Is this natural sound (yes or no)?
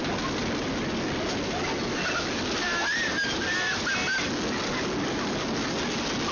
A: yes